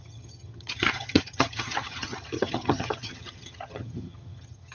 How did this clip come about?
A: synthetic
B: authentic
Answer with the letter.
A